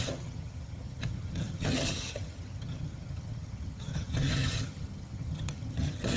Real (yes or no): no